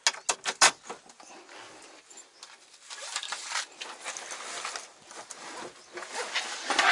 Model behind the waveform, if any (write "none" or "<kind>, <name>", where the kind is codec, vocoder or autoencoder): none